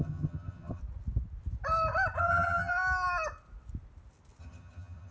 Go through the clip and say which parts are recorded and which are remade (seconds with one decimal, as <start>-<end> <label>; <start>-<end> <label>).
0.0-0.8 remade; 0.8-2.2 recorded; 2.2-2.7 remade; 2.7-4.4 recorded; 4.4-5.1 remade